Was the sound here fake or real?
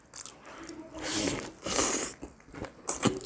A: real